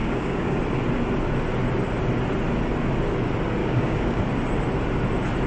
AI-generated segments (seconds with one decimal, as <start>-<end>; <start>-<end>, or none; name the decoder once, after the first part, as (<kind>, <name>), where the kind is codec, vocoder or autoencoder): 0.0-0.6 (codec, DAC); 3.6-4.2